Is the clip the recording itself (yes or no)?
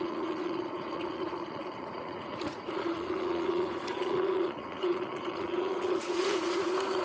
no